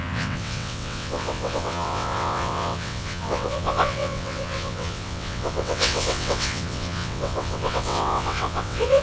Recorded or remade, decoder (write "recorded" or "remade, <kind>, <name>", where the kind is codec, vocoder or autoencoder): remade, vocoder, WaveNeXt